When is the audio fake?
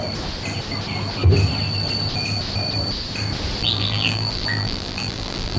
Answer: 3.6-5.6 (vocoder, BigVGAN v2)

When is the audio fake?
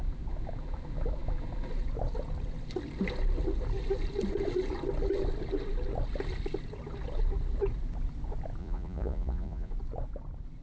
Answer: 8.6-9.7 (vocoder, Vocos)